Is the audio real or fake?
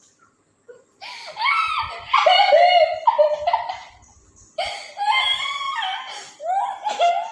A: real